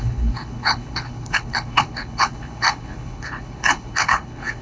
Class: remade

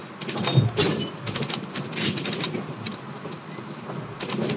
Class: recorded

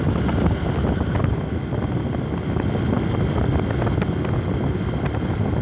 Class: recorded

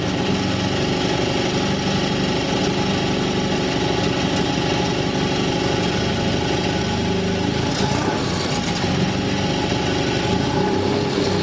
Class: recorded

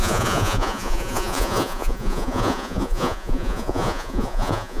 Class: remade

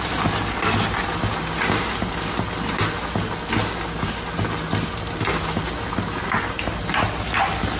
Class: recorded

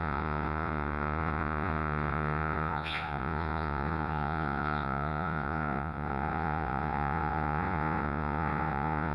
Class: remade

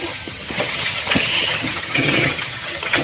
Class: remade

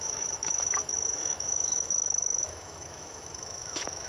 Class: remade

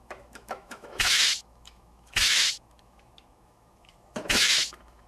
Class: remade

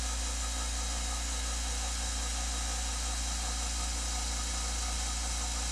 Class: recorded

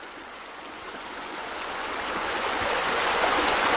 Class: remade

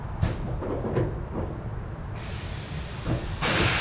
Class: recorded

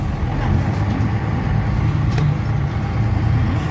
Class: recorded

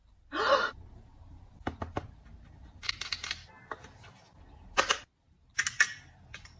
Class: recorded